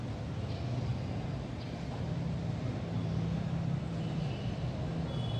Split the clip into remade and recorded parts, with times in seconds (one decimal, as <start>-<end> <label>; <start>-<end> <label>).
0.0-5.4 recorded